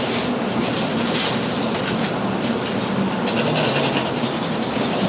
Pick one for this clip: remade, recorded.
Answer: recorded